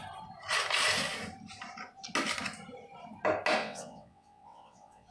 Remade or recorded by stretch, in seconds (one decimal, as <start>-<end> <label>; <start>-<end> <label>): 0.0-3.6 recorded; 3.6-5.1 remade